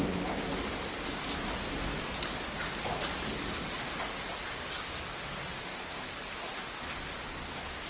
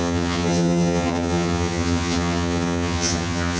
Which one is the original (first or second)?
first